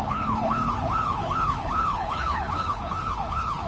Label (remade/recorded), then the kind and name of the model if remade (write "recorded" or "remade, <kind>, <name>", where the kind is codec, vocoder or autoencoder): remade, codec, HILCodec